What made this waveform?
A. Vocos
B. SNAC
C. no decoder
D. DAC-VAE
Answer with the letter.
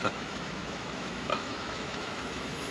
D